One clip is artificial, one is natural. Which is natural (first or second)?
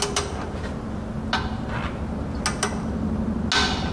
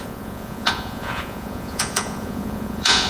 first